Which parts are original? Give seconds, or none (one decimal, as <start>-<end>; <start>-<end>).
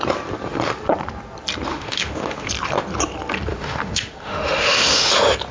0.0-1.7; 2.5-3.5; 5.1-5.5